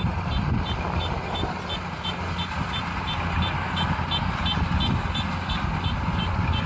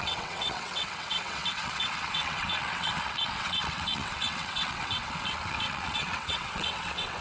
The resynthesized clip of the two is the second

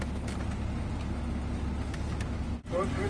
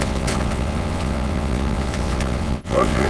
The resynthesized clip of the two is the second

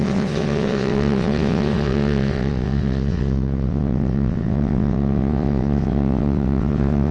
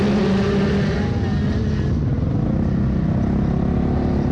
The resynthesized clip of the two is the first